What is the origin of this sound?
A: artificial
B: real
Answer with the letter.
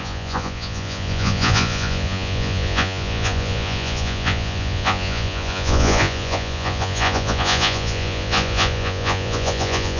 A